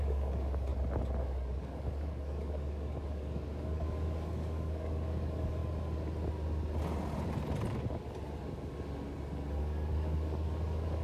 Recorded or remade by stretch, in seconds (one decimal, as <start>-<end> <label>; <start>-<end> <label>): 0.0-0.7 remade; 0.7-1.2 recorded; 1.2-5.6 remade; 5.6-9.6 recorded; 9.6-11.0 remade